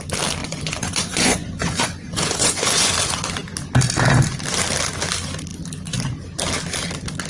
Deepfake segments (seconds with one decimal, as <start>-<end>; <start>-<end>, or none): 0.4-2.9